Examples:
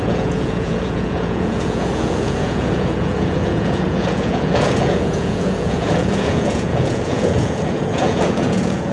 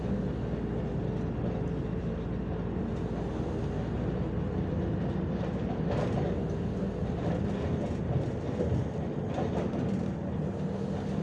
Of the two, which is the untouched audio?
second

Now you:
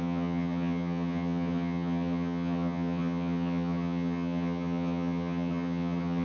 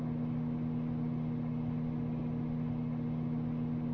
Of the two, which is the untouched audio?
second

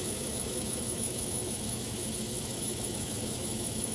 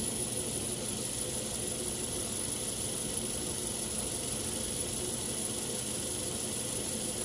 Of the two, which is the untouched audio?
second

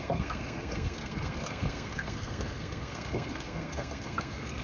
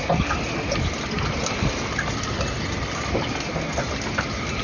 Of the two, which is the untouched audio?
second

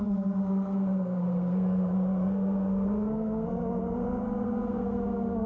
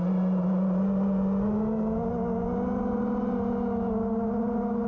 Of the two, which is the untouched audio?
second